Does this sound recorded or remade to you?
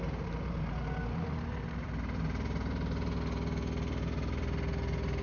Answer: recorded